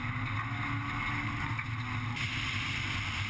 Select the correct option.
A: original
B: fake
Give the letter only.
A